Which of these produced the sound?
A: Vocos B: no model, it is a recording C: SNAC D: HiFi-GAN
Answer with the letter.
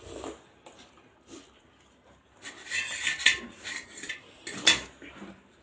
B